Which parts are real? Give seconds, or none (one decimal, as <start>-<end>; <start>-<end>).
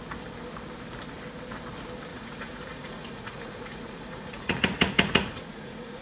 0.0-2.1